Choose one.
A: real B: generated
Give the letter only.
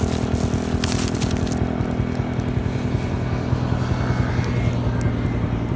A